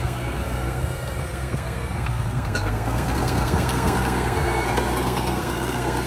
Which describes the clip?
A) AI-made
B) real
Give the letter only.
A